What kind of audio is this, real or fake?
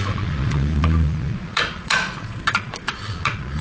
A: fake